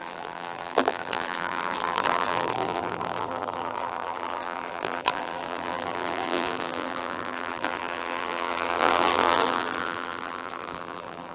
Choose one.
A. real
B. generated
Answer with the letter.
B